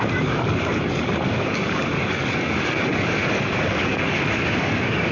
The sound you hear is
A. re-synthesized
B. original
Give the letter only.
A